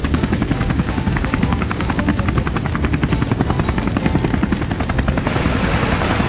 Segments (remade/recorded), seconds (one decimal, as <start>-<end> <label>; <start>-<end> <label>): 0.0-2.1 remade; 2.1-6.3 recorded